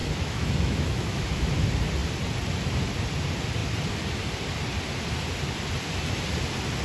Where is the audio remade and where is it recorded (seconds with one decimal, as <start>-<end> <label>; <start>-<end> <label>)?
0.0-1.4 remade; 1.4-6.8 recorded